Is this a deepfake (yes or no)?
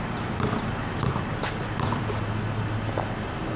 no